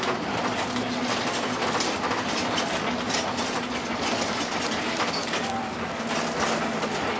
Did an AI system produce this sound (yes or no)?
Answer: no